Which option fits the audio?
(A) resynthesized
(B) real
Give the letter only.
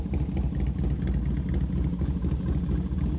B